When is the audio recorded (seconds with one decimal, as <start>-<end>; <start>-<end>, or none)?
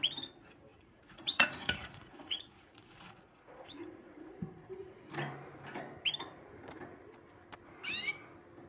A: 0.0-0.7; 5.0-8.7